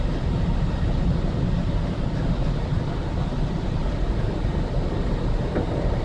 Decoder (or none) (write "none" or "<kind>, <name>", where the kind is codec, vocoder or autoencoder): none